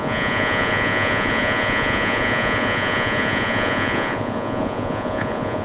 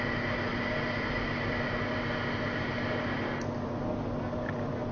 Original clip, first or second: second